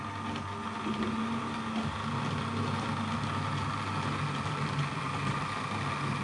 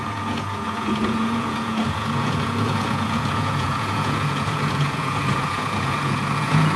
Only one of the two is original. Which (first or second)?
first